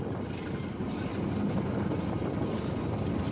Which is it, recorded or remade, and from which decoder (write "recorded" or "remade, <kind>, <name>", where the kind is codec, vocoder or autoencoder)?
recorded